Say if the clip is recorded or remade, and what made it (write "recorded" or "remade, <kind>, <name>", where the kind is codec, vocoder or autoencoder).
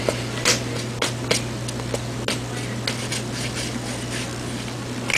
recorded